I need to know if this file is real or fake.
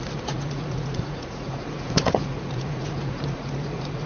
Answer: fake